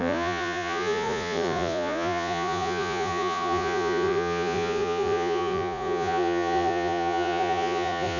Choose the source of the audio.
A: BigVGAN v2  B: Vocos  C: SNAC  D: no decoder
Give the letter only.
B